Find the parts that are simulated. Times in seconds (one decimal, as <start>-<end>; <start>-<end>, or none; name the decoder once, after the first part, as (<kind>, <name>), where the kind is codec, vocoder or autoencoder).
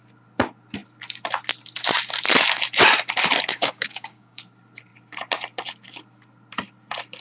3.5-4.4 (codec, DAC)